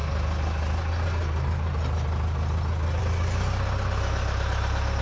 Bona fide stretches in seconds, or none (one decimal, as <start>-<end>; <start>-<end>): 0.0-5.0